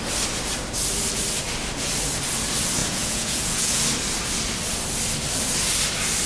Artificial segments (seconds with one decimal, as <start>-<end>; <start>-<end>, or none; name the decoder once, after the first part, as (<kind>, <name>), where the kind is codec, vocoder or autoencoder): 2.8-3.8 (vocoder, Vocos)